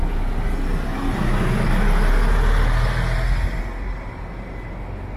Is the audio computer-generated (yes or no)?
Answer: no